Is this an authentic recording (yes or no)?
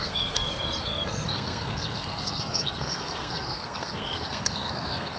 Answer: no